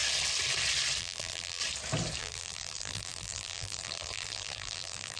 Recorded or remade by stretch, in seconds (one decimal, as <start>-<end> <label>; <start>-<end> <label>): 0.0-1.0 recorded; 1.0-1.6 remade; 1.6-2.2 recorded; 2.2-5.2 remade